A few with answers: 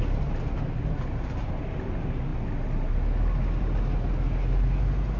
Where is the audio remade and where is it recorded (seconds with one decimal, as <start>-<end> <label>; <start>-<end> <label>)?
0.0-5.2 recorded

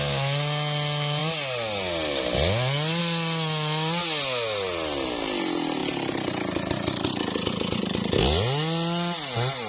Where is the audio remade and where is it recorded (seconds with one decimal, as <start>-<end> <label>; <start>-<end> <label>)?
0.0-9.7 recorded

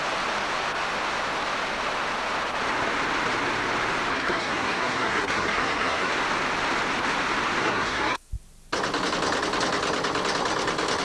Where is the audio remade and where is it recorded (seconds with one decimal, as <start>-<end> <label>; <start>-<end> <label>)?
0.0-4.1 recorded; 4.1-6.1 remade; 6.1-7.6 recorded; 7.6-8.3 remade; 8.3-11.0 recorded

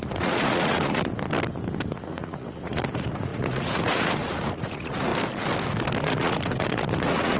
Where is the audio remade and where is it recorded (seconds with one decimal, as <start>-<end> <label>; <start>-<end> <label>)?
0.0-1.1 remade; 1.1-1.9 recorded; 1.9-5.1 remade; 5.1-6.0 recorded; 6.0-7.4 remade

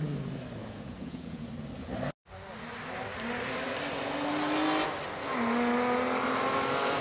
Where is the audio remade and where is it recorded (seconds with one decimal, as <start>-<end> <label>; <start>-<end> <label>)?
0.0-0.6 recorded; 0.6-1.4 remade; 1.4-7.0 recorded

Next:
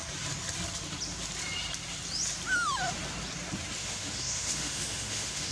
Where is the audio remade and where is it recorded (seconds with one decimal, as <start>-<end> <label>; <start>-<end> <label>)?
0.0-3.8 recorded; 3.8-5.5 remade

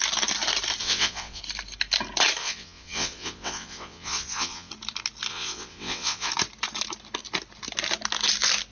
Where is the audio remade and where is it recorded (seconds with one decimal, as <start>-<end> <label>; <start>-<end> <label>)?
0.0-0.8 recorded; 0.8-1.4 remade; 1.4-2.4 recorded; 2.4-4.7 remade; 4.7-5.3 recorded; 5.3-6.3 remade; 6.3-8.7 recorded